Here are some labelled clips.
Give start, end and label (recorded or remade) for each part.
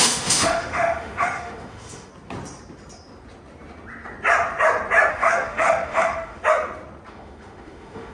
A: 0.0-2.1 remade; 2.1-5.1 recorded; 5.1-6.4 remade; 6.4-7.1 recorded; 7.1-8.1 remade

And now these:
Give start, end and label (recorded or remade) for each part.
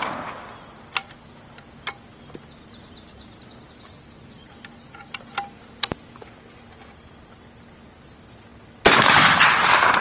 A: 0.0-10.0 recorded